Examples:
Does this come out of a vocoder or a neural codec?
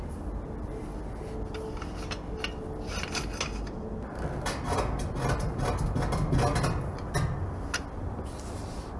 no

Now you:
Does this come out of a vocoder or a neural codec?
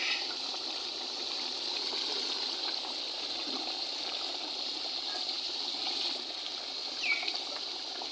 no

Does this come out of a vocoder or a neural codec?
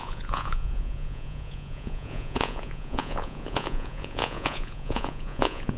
yes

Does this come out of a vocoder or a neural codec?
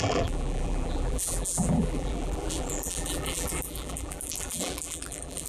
yes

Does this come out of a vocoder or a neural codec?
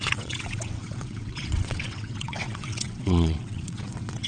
yes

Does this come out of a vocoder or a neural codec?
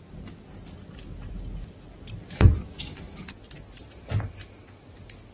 no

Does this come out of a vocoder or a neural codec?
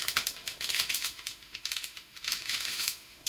yes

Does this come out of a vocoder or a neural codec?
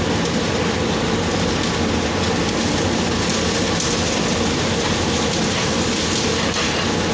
no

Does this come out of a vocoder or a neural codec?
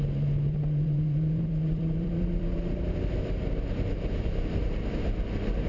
yes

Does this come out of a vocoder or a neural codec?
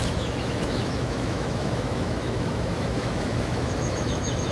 yes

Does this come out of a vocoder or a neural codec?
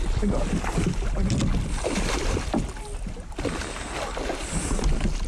no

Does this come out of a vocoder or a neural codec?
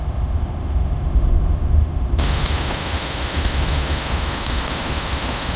yes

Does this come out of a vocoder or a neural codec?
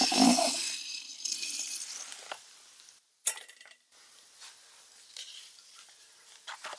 yes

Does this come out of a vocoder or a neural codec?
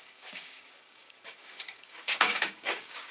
yes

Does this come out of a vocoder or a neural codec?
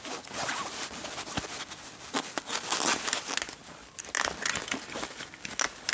no